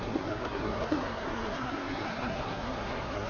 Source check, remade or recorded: remade